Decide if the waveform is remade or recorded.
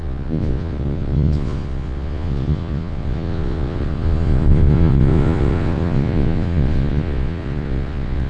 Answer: remade